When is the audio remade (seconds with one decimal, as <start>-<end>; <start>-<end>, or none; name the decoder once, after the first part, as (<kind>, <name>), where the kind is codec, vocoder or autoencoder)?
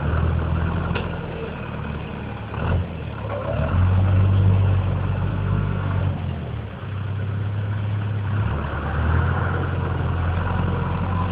5.3-6.0 (codec, SNAC)